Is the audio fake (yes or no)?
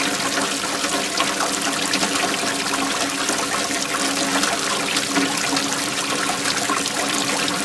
no